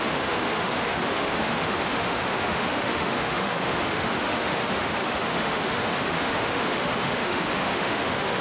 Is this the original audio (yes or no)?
no